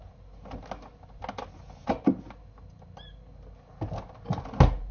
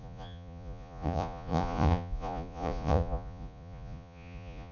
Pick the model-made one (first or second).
second